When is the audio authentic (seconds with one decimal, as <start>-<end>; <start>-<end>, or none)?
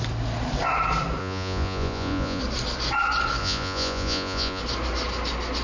0.0-1.2; 2.4-3.4; 4.6-5.6